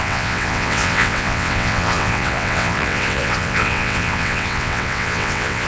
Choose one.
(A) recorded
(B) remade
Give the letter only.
B